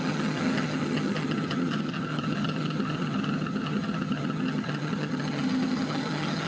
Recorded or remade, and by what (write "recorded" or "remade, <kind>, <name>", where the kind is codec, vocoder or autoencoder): remade, vocoder, HiFi-GAN